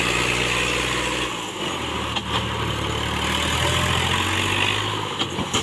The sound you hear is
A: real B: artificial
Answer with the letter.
A